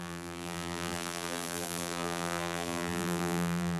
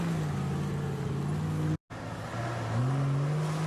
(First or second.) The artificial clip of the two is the first